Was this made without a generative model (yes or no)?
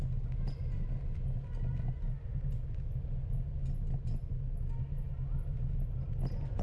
yes